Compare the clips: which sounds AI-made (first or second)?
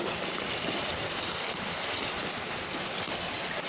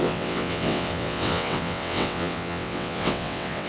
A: second